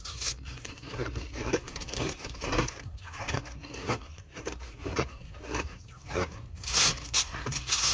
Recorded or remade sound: remade